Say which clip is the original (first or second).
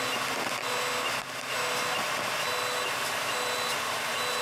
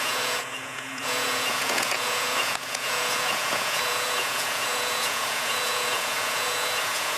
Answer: first